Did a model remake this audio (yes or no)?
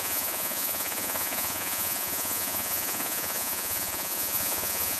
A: yes